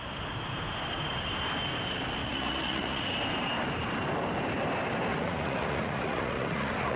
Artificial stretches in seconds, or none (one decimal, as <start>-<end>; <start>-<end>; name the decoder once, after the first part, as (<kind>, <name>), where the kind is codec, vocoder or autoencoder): 2.2-3.0 (vocoder, Vocos); 5.1-7.0